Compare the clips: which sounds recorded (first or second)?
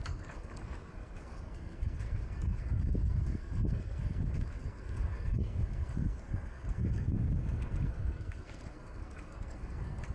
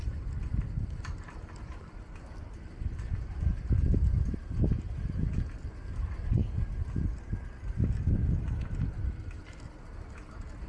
second